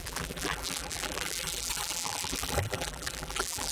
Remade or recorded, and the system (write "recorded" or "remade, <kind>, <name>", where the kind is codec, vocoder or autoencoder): remade, vocoder, BigVGAN v2